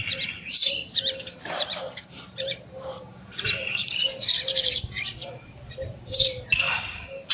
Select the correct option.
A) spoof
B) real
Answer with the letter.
A